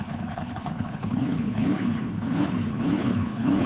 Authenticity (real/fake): fake